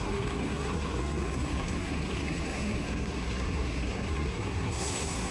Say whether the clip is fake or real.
fake